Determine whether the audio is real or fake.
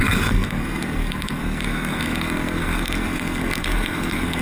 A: fake